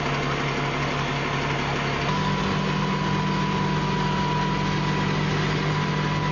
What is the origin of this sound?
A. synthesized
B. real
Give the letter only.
B